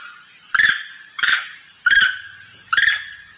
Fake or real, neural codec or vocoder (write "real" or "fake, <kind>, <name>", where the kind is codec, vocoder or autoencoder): real